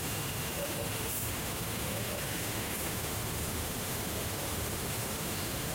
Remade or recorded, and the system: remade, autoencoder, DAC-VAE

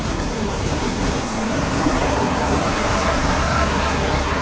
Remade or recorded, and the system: remade, codec, SNAC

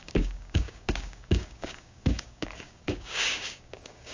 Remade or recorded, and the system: remade, codec, DAC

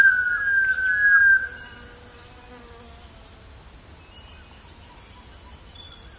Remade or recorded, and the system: recorded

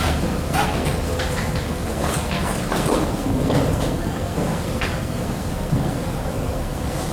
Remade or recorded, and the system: remade, codec, SNAC